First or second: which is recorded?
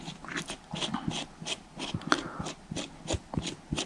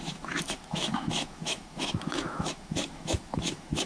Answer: first